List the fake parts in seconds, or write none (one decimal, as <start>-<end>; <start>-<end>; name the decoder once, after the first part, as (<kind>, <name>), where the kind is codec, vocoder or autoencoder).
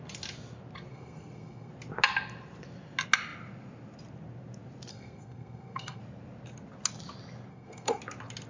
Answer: 0.9-1.7 (codec, SNAC); 4.9-6.0; 7.5-8.0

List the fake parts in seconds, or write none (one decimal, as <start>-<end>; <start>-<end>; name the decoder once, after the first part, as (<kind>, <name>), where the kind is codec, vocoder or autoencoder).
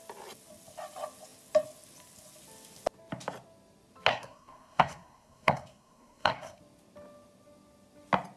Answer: 4.1-6.6 (codec, SNAC)